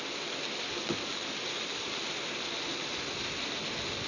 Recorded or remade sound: recorded